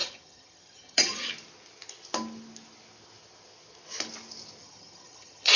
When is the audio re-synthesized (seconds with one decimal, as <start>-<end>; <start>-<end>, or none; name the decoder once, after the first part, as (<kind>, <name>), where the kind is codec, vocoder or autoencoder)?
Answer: 0.0-1.3 (vocoder, HiFi-GAN); 4.6-5.6